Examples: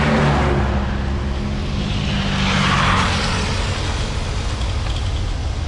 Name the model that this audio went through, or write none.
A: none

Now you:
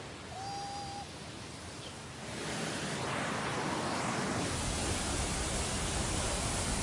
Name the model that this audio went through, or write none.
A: none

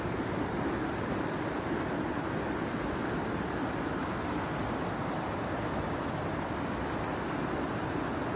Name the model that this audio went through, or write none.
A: none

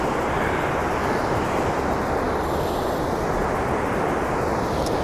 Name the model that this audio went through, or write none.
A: none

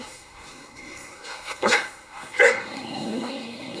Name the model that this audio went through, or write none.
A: codec, SNAC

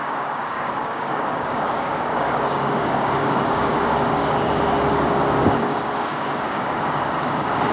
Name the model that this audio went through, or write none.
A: codec, DAC